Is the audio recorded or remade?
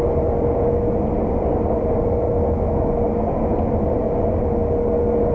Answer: recorded